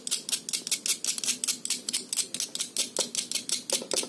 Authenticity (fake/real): real